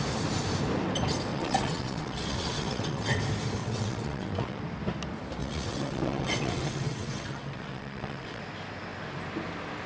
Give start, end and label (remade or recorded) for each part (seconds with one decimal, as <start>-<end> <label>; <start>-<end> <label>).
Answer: 0.0-1.3 recorded; 1.3-3.2 remade; 3.2-3.6 recorded; 3.6-4.6 remade; 4.6-5.4 recorded; 5.4-8.4 remade; 8.4-9.9 recorded